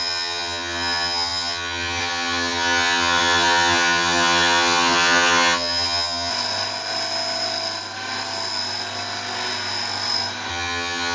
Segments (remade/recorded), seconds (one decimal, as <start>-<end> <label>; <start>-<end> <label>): 0.0-6.3 remade; 6.3-10.5 recorded; 10.5-11.1 remade